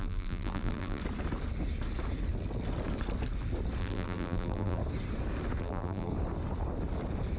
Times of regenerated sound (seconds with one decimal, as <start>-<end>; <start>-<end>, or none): 0.0-1.0; 3.8-4.8; 5.6-6.1